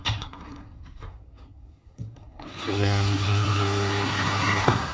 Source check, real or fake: fake